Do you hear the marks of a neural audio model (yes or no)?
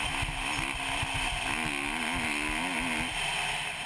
no